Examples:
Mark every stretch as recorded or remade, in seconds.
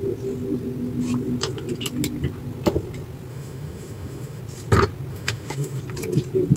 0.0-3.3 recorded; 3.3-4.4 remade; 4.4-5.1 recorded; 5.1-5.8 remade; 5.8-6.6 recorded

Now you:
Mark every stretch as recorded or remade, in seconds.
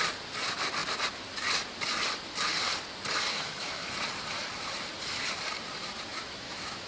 0.0-3.3 recorded; 3.3-3.9 remade; 3.9-6.1 recorded; 6.1-6.9 remade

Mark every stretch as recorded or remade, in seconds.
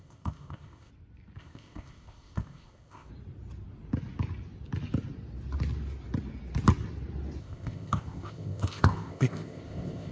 0.0-0.9 remade; 0.9-1.4 recorded; 1.4-3.1 remade; 3.1-7.4 recorded; 7.4-10.1 remade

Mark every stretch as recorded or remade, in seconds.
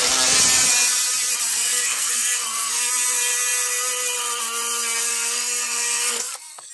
0.0-1.5 recorded; 1.5-2.9 remade; 2.9-5.1 recorded; 5.1-6.7 remade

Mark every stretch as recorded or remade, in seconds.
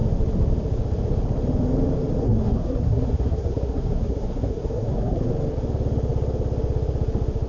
0.0-2.2 recorded; 2.2-5.3 remade; 5.3-7.5 recorded